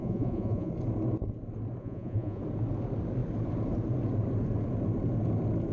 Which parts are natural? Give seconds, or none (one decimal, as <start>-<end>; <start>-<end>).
0.7-1.8; 2.4-5.7